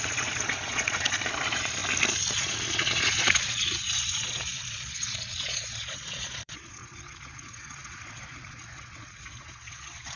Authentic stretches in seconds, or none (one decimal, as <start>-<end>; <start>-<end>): 1.8-2.3